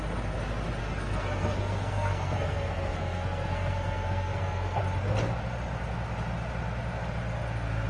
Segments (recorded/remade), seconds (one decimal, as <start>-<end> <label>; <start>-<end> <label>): 0.0-0.8 recorded; 0.8-4.8 remade; 4.8-7.9 recorded